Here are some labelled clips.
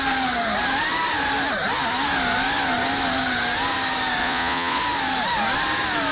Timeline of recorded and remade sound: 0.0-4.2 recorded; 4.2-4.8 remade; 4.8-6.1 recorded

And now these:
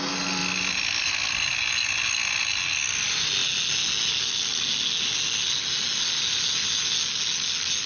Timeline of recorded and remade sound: 0.0-7.9 recorded

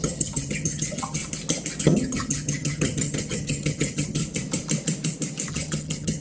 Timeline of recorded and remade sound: 0.0-1.2 remade; 1.2-1.8 recorded; 1.8-4.2 remade; 4.2-5.5 recorded; 5.5-6.2 remade

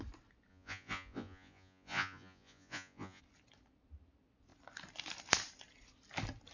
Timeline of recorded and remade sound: 0.0-0.5 recorded; 0.5-3.2 remade; 3.2-6.5 recorded

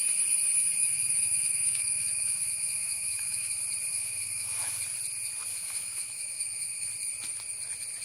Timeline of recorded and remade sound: 0.0-0.8 recorded; 0.8-3.5 remade; 3.5-3.9 recorded; 3.9-4.8 remade; 4.8-5.5 recorded; 5.5-6.9 remade; 6.9-8.0 recorded

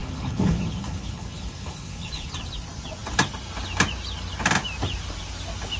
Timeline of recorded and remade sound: 0.0-2.3 remade; 2.3-5.8 recorded

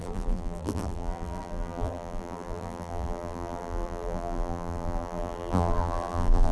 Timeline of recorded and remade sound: 0.0-6.5 remade